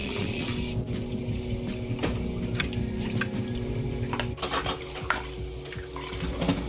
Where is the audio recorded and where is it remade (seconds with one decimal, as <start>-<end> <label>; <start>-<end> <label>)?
0.0-0.5 remade; 0.5-6.7 recorded